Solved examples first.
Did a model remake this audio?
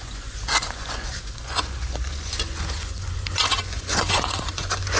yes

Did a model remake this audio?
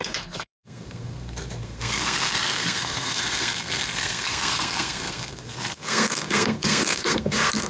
yes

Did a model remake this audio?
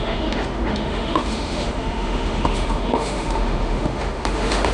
yes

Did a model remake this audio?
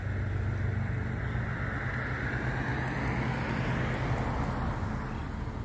no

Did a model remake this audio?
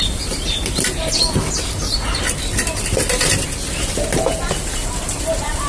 no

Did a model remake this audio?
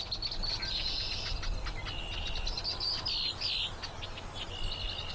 no